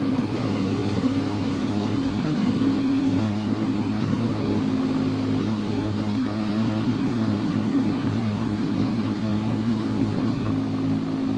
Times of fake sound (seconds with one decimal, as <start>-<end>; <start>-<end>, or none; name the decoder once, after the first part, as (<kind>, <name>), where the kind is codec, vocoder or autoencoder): 0.0-4.6 (codec, SNAC); 5.4-10.5